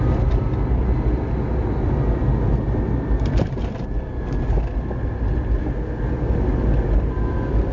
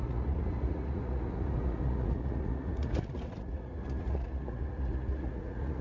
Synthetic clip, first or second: second